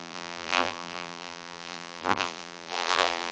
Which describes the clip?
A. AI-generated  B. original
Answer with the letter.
A